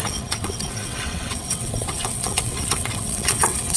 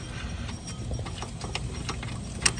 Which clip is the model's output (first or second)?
first